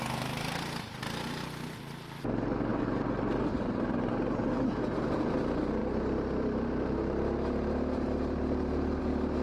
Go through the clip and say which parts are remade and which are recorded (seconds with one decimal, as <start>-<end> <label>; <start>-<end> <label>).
0.0-2.7 recorded; 2.7-4.7 remade; 4.7-5.8 recorded; 5.8-9.0 remade; 9.0-9.4 recorded